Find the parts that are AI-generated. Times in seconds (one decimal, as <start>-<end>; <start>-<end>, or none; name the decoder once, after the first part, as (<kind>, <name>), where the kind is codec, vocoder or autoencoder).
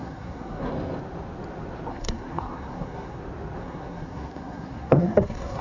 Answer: 0.0-0.7 (codec, SNAC); 1.9-3.2; 3.6-5.6